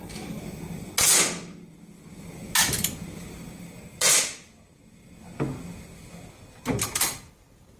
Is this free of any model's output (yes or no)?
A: yes